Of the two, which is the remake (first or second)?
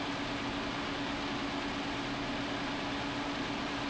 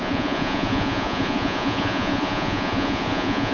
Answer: second